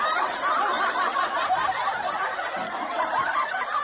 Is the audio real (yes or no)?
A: no